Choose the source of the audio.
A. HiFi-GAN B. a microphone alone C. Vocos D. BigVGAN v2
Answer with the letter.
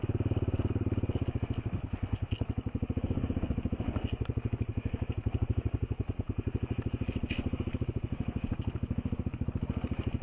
B